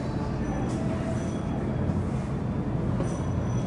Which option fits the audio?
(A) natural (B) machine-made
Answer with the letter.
A